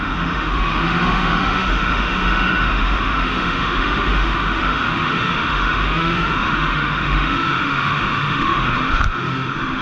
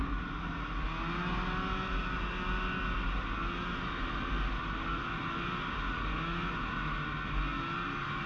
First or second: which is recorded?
second